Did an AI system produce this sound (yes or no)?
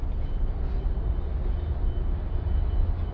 no